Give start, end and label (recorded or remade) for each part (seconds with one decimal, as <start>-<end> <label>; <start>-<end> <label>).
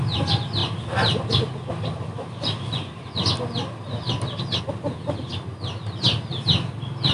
0.0-7.1 recorded